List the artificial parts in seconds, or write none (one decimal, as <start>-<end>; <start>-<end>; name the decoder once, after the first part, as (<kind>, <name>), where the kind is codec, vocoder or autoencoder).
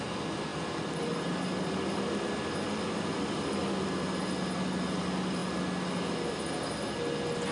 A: none